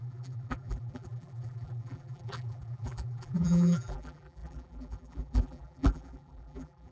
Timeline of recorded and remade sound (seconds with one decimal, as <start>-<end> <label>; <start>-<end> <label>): 0.0-6.9 remade